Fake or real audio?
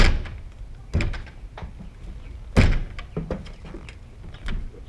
real